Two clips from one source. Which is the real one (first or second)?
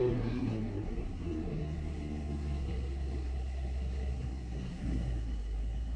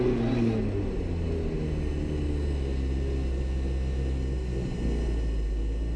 second